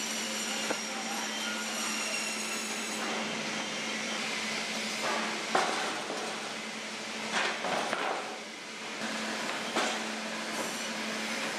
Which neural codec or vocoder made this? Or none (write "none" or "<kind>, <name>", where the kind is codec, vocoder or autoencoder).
none